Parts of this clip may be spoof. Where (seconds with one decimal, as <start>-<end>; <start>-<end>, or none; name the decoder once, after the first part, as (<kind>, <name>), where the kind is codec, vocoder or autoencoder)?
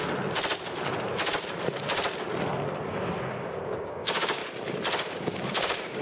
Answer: 3.2-4.4 (codec, DAC); 5.0-6.0